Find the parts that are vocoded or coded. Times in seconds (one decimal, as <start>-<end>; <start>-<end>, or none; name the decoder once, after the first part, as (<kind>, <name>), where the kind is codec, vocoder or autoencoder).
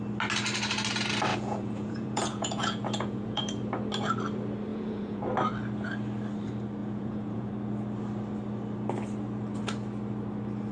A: 1.3-3.4 (vocoder, Vocos); 4.7-5.2; 6.8-7.5